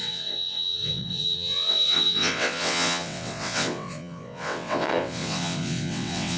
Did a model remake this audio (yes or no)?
yes